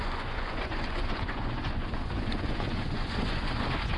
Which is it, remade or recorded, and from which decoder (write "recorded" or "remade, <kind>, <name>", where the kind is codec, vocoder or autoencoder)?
remade, vocoder, Vocos